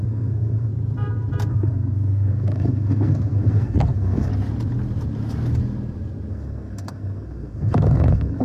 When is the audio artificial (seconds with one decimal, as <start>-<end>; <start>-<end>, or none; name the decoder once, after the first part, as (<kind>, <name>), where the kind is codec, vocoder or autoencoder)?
0.0-0.7 (codec, SNAC); 1.5-4.3; 6.3-8.4